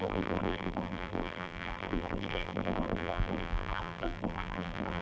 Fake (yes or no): yes